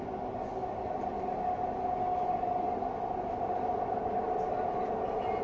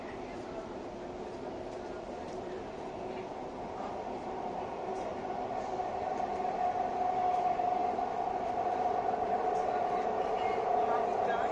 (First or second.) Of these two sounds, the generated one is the second